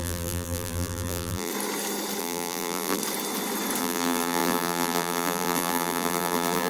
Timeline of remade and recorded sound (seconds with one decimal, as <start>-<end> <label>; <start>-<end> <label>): 0.0-1.5 remade; 1.5-2.2 recorded; 2.2-3.0 remade; 3.0-3.8 recorded; 3.8-6.7 remade